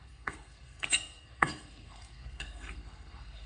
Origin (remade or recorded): remade